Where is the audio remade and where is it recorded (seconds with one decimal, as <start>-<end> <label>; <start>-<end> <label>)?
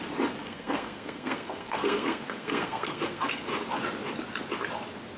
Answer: 0.0-0.4 recorded; 0.4-3.4 remade; 3.4-5.2 recorded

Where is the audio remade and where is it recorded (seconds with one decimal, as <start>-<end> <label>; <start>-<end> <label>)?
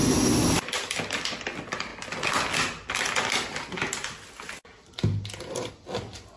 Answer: 0.0-0.5 recorded; 0.5-1.9 remade; 1.9-5.7 recorded; 5.7-6.4 remade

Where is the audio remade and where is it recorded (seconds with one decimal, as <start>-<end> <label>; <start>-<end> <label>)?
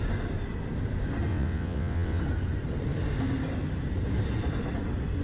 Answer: 0.0-1.3 recorded; 1.3-2.2 remade; 2.2-5.2 recorded